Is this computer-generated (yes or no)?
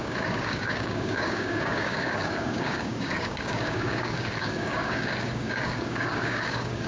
yes